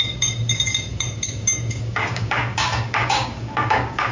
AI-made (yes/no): yes